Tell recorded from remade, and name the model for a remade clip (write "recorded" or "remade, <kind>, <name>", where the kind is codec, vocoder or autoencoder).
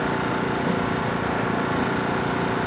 recorded